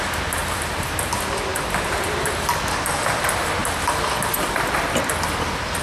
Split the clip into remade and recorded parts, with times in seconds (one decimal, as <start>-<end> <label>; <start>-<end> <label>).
0.0-0.4 recorded; 0.4-1.1 remade; 1.1-5.8 recorded